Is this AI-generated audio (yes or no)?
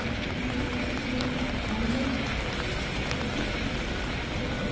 no